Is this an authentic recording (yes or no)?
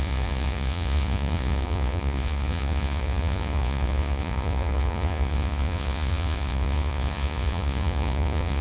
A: no